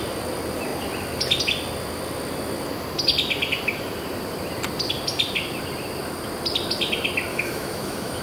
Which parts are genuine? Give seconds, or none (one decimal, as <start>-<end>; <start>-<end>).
0.0-7.3